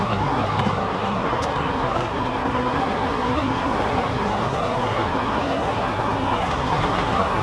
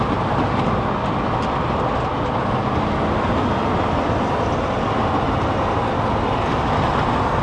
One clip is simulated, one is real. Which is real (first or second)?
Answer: second